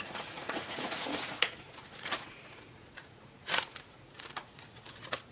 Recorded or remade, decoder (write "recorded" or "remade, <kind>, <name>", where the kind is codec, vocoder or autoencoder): remade, vocoder, Vocos